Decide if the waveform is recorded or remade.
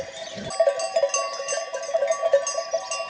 recorded